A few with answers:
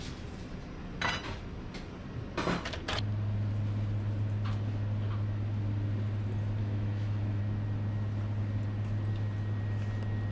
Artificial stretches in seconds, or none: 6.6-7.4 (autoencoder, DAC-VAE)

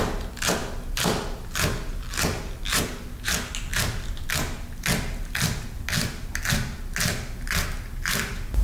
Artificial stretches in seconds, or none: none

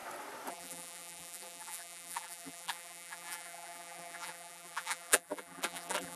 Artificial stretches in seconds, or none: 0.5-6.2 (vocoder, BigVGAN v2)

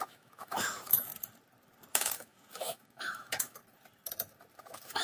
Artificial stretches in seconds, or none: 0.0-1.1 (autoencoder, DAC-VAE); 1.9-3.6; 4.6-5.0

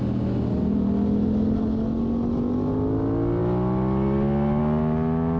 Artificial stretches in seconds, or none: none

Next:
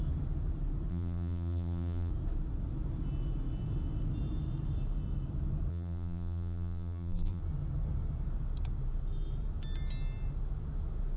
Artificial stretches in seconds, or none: 0.9-2.1 (vocoder, BigVGAN v2); 5.7-7.4

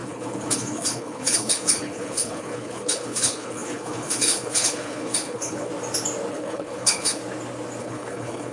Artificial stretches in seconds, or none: 0.0-5.7 (codec, HILCodec); 6.3-7.2; 7.8-8.5